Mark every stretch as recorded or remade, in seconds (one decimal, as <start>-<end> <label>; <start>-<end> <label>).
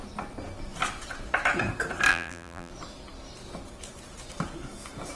0.0-2.1 recorded; 2.1-2.7 remade; 2.7-5.2 recorded